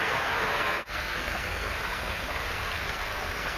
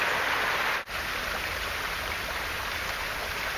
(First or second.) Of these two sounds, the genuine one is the second